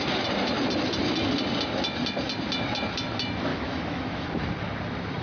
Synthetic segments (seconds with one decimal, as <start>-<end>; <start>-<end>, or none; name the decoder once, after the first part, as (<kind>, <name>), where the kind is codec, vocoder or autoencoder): 3.5-4.3 (autoencoder, DAC-VAE)